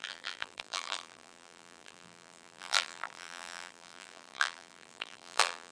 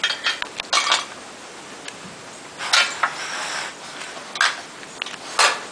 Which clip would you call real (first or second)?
second